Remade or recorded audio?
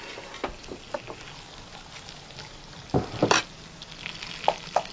recorded